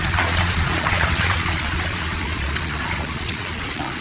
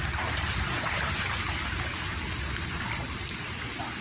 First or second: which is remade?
first